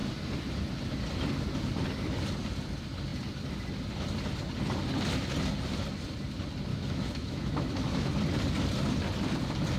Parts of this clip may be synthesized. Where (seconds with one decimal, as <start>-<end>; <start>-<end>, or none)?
6.7-8.1